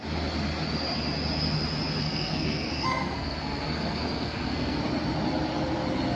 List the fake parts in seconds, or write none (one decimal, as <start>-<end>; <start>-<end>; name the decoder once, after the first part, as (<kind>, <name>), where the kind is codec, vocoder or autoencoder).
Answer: 2.0-4.8 (codec, SNAC)